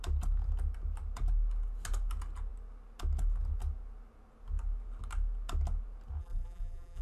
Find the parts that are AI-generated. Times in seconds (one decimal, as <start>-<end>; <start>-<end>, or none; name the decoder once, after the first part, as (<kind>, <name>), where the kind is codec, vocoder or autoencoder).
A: 6.2-7.0 (vocoder, BigVGAN v2)